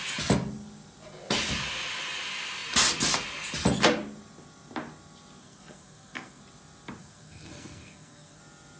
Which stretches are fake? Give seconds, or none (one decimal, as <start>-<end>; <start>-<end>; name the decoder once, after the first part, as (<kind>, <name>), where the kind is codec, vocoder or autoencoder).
5.4-6.4 (codec, SNAC); 7.0-8.4